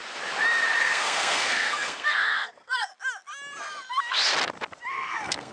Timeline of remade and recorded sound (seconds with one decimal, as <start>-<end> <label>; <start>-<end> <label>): 0.0-0.8 recorded; 0.8-2.9 remade; 2.9-4.9 recorded; 4.9-5.5 remade